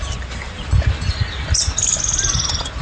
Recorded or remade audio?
recorded